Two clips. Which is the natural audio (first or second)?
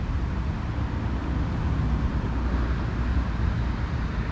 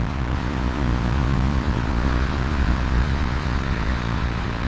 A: first